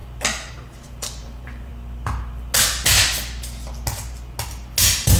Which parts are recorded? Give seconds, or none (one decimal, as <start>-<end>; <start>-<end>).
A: 0.0-0.5; 1.7-4.8